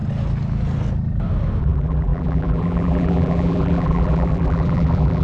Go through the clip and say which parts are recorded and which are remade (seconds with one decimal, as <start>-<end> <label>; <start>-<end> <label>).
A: 0.0-1.6 recorded; 1.6-5.2 remade